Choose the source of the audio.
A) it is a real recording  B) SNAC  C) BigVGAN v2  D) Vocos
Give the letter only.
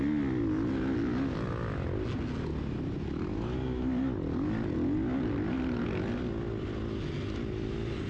A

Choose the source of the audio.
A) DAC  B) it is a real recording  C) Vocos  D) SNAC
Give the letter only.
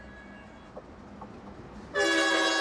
B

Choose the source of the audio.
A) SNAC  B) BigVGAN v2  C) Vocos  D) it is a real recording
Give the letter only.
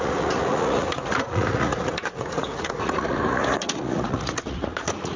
C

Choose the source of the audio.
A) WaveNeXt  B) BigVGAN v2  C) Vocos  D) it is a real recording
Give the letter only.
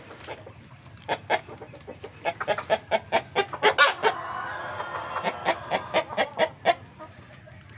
D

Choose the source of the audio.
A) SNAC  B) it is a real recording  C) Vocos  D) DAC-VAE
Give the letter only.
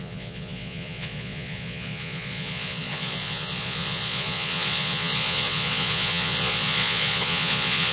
C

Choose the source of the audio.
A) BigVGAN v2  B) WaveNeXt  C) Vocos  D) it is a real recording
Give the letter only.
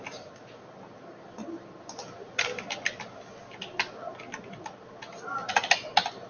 D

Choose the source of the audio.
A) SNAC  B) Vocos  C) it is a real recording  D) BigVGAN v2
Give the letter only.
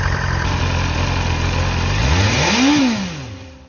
C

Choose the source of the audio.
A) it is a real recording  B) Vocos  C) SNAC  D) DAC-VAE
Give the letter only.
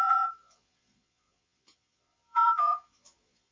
B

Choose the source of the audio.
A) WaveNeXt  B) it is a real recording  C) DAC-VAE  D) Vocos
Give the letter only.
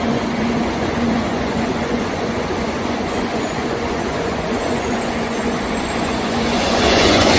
D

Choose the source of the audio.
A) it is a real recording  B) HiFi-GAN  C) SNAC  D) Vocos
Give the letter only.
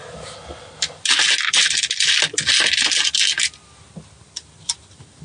A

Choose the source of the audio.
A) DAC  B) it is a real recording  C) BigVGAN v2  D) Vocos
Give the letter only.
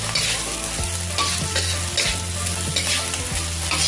B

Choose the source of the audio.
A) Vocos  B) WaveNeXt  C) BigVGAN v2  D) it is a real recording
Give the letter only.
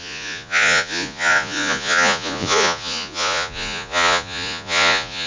A